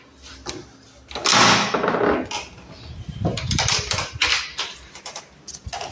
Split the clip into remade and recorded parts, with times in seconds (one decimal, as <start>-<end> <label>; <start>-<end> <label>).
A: 0.0-3.3 recorded; 3.3-5.2 remade; 5.2-5.9 recorded